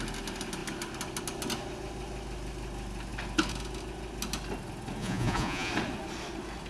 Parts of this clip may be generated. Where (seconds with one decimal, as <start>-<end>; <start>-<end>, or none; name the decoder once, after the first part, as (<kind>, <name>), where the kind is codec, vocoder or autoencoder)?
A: 5.0-5.7 (vocoder, Vocos)